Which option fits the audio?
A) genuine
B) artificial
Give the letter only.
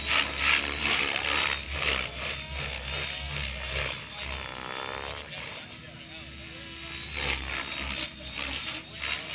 A